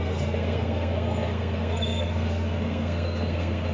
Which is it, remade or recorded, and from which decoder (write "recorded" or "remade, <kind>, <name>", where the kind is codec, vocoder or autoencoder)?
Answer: remade, codec, SNAC